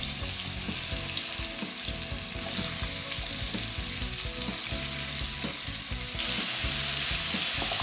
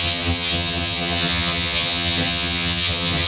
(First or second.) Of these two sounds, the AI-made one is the second